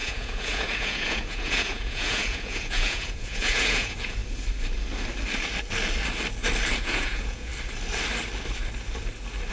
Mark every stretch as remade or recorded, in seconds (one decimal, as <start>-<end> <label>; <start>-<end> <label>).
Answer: 0.0-4.2 remade; 4.2-6.8 recorded; 6.8-7.5 remade; 7.5-9.5 recorded